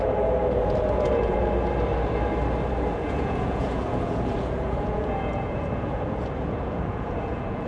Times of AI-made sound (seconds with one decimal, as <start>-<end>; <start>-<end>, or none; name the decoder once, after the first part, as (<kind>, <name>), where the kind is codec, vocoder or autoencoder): 0.0-1.4 (vocoder, Vocos); 2.9-7.7

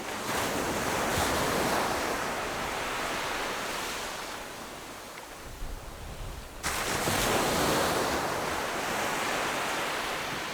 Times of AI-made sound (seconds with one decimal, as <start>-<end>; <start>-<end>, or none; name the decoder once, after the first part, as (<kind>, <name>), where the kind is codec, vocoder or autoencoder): none

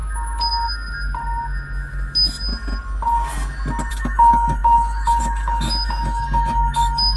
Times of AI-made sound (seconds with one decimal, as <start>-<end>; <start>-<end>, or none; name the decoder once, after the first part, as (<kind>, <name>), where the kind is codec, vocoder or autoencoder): 3.9-7.2 (autoencoder, DAC-VAE)